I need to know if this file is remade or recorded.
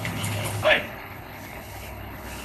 remade